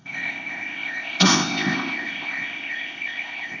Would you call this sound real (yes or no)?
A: no